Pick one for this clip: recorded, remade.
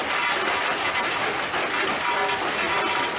recorded